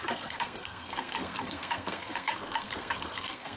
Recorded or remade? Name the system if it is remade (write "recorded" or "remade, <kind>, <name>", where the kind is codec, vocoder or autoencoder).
remade, codec, SNAC